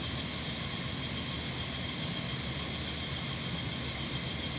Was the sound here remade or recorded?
recorded